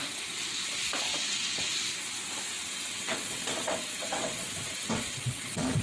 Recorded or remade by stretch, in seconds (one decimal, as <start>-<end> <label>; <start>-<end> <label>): 0.0-1.1 recorded; 1.1-1.7 remade; 1.7-2.6 recorded; 2.6-5.8 remade